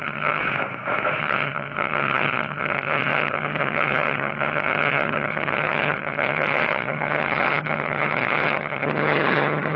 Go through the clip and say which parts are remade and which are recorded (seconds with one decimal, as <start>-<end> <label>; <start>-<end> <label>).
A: 0.0-0.4 remade; 0.4-1.2 recorded; 1.2-9.8 remade